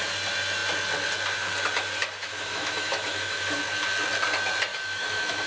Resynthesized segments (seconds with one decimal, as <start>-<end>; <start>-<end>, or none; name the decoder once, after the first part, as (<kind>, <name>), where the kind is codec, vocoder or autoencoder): 2.2-3.6 (autoencoder, DAC-VAE); 4.7-5.5